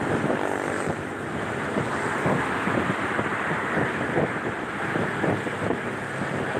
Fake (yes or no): no